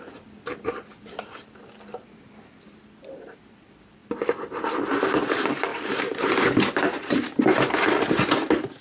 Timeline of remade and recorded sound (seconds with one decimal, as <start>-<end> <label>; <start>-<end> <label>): 0.0-8.8 recorded